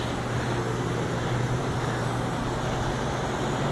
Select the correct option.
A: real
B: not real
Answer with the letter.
A